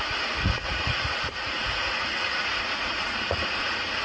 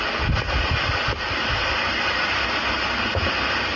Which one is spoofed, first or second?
first